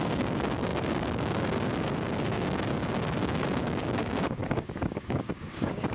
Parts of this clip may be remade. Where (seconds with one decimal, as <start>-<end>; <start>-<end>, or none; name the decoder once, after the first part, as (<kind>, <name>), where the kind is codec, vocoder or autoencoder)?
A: 0.0-5.9 (codec, DAC)